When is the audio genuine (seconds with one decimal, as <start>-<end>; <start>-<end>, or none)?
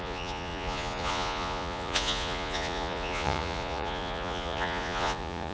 none